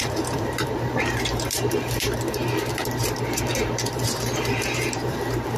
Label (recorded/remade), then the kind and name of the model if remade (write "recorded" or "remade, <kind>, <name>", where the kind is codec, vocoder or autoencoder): remade, vocoder, BigVGAN v2